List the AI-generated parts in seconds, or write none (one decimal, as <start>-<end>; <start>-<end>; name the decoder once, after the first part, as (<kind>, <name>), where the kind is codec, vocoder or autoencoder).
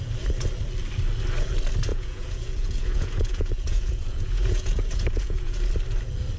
1.9-5.7 (vocoder, Vocos)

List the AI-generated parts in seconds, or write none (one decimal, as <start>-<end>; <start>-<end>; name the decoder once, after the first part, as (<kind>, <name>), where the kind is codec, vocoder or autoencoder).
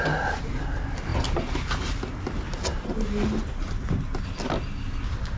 none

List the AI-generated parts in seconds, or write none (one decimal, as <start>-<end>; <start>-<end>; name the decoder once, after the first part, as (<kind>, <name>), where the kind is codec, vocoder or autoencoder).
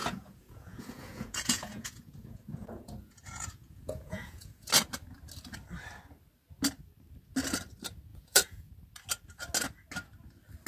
0.0-4.7 (vocoder, Vocos); 8.1-8.7